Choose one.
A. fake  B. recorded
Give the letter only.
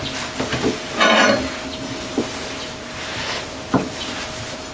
B